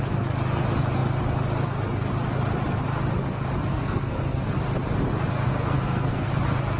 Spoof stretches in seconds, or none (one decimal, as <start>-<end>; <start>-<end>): 3.7-4.4; 5.5-6.3